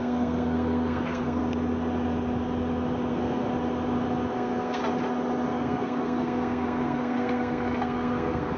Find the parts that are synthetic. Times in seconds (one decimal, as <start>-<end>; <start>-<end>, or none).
0.0-1.4; 3.1-3.5; 4.3-4.8; 5.5-8.6